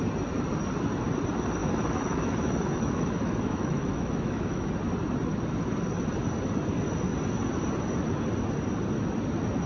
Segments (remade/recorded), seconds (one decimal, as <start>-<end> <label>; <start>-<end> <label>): 0.0-1.6 recorded; 1.6-4.7 remade; 4.7-9.7 recorded